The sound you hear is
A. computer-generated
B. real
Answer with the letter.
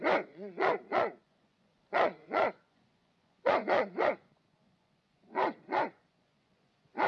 A